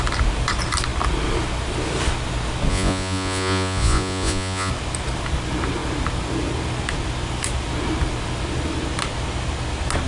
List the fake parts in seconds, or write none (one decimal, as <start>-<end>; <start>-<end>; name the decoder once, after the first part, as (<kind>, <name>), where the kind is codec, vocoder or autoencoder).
2.7-4.7 (vocoder, Vocos)